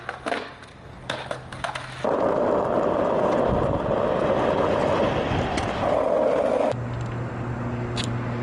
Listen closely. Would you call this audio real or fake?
real